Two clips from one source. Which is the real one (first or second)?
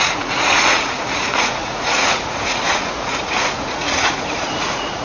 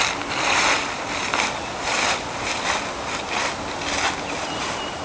second